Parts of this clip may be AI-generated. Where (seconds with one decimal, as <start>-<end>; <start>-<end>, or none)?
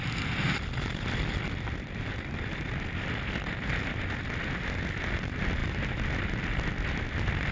none